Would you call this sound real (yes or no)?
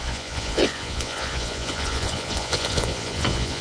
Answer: no